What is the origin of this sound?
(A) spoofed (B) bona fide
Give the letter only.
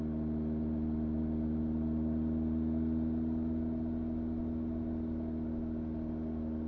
B